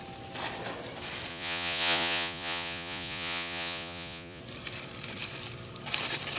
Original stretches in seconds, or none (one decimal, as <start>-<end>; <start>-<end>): 0.0-1.3; 4.4-6.4